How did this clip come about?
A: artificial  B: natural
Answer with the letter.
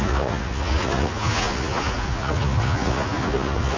A